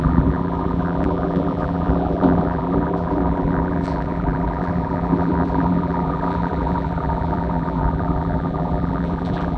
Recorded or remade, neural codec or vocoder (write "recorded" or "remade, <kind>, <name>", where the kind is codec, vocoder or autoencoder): remade, vocoder, BigVGAN v2